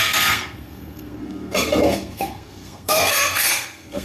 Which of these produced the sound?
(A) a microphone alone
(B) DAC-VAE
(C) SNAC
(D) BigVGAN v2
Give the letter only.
C